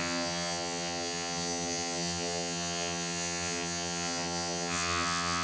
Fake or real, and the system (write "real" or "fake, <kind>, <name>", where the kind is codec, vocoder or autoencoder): fake, vocoder, HiFi-GAN